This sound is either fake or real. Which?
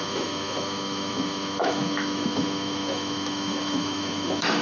fake